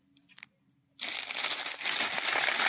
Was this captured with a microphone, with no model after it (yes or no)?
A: yes